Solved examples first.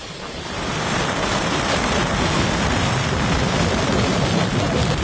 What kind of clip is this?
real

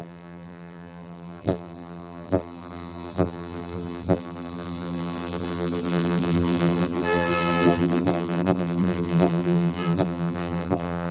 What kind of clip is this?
fake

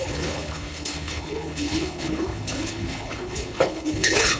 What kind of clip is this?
fake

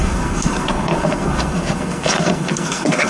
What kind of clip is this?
fake